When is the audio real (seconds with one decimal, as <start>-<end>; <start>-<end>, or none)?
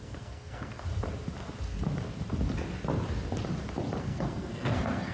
0.9-4.0